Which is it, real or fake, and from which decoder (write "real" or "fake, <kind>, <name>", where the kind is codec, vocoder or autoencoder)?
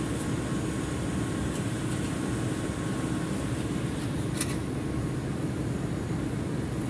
real